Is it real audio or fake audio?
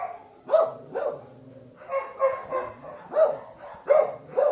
real